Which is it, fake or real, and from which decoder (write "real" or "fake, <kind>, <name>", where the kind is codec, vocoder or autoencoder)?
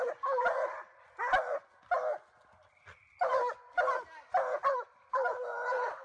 real